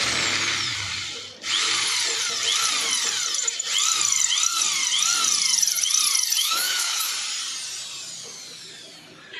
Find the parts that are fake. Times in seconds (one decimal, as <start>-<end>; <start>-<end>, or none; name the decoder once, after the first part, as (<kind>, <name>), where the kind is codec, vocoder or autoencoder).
6.4-7.1 (autoencoder, DAC-VAE)